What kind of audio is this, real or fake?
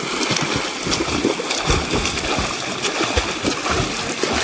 real